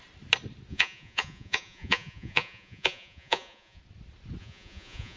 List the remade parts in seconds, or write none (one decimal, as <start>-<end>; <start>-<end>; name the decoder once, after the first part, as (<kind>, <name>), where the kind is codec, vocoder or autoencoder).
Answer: 0.7-3.8 (vocoder, Vocos); 4.4-5.2